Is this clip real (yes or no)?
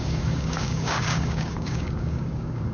no